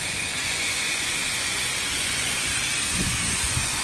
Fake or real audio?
fake